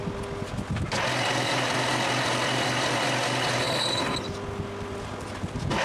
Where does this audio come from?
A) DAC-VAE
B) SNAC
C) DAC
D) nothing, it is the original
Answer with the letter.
D